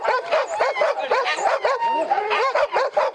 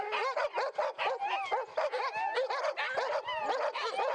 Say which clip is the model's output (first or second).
first